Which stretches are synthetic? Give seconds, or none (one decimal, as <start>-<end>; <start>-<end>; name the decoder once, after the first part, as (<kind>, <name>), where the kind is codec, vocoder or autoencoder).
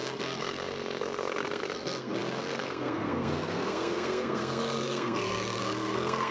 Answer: 0.0-6.3 (codec, SNAC)